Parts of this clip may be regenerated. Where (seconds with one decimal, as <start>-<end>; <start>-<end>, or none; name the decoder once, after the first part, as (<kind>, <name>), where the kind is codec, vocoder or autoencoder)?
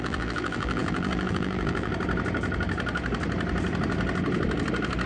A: 0.0-1.9 (vocoder, BigVGAN v2)